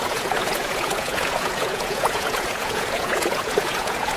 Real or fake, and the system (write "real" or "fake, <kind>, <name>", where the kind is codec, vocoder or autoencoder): fake, vocoder, Vocos